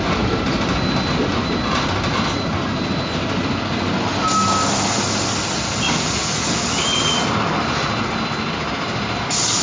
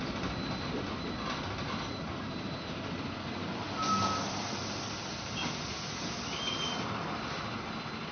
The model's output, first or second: second